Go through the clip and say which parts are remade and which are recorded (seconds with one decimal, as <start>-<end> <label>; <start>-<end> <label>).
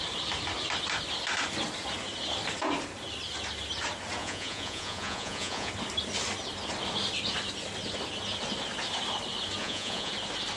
0.0-4.2 recorded; 4.2-5.7 remade; 5.7-9.6 recorded; 9.6-10.1 remade; 10.1-10.6 recorded